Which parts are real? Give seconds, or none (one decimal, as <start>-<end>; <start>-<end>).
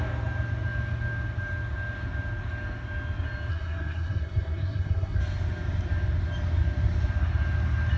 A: 0.0-3.5; 5.2-8.0